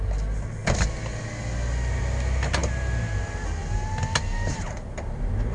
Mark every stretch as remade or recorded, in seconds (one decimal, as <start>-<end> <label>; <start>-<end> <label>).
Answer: 0.0-5.5 recorded